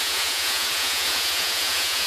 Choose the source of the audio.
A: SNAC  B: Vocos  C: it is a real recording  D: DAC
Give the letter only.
B